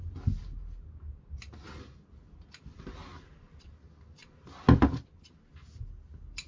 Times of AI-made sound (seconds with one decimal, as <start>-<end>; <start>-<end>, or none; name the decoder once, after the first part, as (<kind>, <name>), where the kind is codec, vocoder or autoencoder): none